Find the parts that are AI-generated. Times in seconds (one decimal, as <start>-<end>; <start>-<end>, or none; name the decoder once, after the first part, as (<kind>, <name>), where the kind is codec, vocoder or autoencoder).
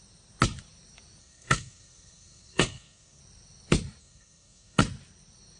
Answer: 1.2-3.2 (codec, SNAC); 4.0-4.8